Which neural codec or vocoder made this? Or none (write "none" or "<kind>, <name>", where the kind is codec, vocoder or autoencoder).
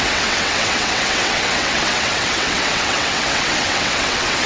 vocoder, WaveNeXt